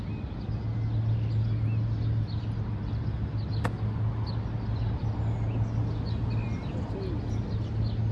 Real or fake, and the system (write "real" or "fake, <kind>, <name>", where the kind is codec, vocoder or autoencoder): real